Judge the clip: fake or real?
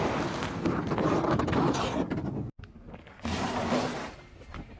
real